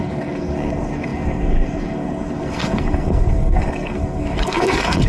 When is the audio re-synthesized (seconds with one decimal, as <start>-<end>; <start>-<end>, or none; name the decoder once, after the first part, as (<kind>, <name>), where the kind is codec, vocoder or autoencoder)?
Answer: 0.0-5.1 (codec, SNAC)